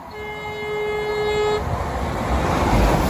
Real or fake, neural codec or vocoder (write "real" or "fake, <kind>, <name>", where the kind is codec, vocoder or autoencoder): real